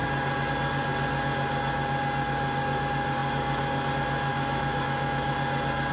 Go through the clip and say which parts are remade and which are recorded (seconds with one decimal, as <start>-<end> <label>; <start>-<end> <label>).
0.0-4.3 recorded; 4.3-5.3 remade; 5.3-5.9 recorded